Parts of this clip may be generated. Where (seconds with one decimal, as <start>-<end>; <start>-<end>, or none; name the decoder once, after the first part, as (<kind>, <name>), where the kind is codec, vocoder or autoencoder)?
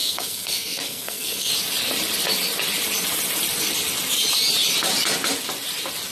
0.0-1.5 (codec, SNAC)